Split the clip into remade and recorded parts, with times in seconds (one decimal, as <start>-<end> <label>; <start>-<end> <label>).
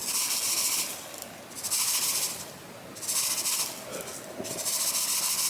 0.0-5.5 recorded